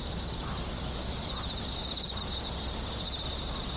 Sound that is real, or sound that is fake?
real